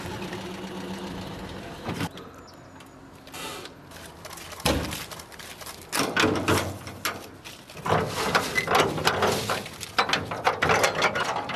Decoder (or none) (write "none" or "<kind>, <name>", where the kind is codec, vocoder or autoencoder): none